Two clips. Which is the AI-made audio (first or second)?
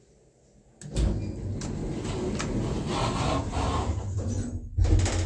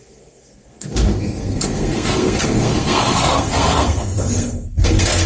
second